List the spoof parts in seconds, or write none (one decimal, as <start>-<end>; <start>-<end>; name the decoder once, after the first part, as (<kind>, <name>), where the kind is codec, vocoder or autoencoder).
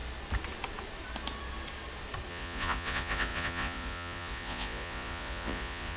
2.3-6.0 (vocoder, Vocos)